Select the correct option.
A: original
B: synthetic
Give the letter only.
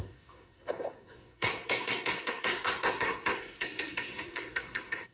B